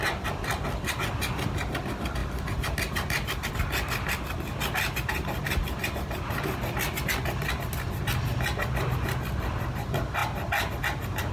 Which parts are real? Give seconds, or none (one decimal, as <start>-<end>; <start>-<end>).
0.0-2.2; 3.5-11.3